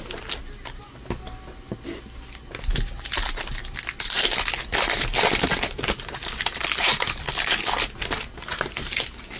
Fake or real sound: real